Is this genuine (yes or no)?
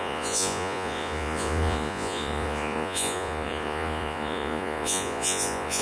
no